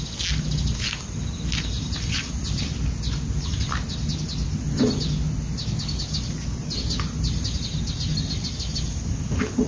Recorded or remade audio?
recorded